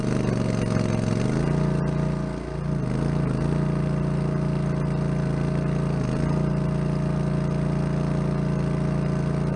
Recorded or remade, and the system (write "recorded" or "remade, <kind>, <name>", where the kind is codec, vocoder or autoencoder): recorded